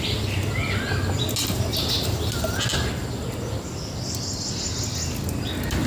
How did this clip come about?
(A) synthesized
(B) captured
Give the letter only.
B